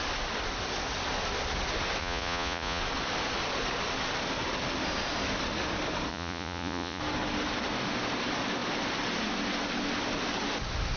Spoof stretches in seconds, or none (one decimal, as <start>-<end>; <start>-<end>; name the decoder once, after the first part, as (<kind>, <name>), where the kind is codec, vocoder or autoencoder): 2.0-2.8 (vocoder, Vocos); 6.1-7.0